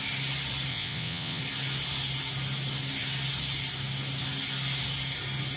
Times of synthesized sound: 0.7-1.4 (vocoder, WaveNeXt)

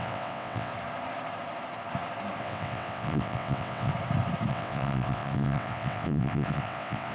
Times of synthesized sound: 0.0-0.7 (vocoder, WaveNeXt); 2.4-3.9; 4.5-7.1

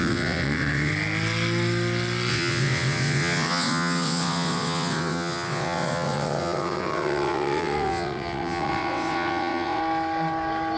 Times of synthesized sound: 0.0-0.9 (vocoder, WaveNeXt); 2.3-9.8

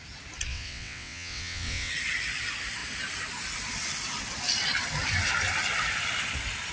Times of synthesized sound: 0.5-1.9 (vocoder, WaveNeXt)

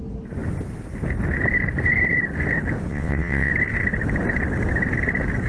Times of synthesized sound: 2.9-3.5 (vocoder, WaveNeXt)

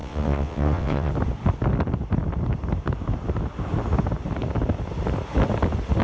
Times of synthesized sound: 0.0-1.1 (vocoder, WaveNeXt)

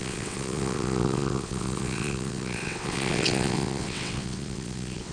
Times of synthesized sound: 0.0-5.1 (vocoder, WaveNeXt)